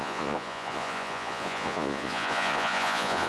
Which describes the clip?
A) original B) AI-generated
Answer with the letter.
B